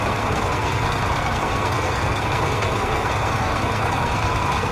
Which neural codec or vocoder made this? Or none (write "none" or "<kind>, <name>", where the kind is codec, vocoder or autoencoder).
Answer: codec, SNAC